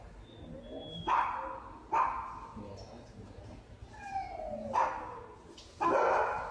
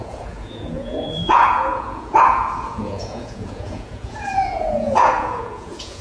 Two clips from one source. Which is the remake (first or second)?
second